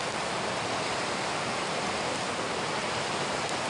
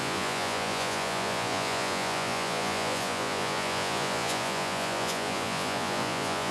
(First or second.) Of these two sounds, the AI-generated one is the second